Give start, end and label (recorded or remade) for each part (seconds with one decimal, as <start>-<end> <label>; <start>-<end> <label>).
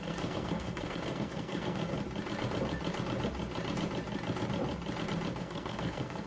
0.0-1.9 remade; 1.9-5.4 recorded; 5.4-6.3 remade